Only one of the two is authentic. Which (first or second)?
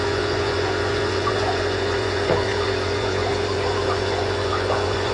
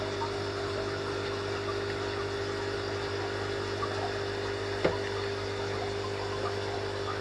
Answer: second